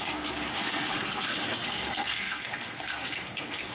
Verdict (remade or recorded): remade